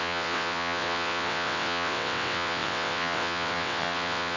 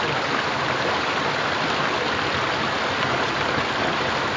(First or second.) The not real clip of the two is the first